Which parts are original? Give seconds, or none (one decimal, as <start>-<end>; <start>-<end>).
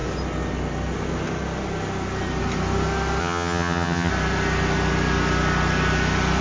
0.0-3.2; 4.1-6.4